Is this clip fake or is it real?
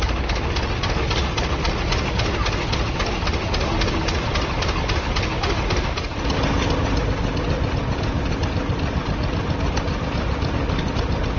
real